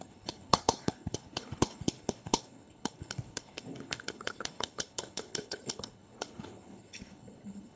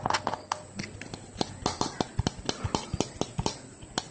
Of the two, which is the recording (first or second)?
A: second